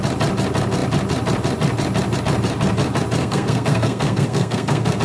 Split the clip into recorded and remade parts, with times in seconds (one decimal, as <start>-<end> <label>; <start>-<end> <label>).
0.0-3.2 recorded; 3.2-5.0 remade